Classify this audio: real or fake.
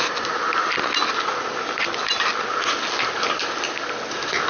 real